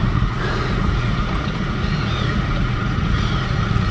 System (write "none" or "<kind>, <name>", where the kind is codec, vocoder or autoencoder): vocoder, Vocos